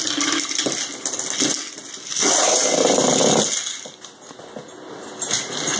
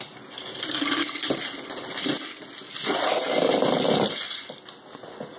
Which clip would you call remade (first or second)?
second